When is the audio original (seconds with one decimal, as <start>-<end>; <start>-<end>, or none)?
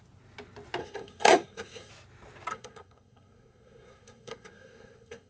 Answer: 0.0-0.8; 1.9-2.5